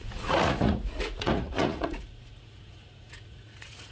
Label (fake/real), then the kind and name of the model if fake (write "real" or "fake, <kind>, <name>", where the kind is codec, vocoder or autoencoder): fake, vocoder, Vocos